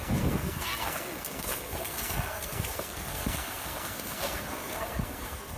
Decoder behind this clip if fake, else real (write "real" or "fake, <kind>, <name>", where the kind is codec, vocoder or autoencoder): fake, codec, SNAC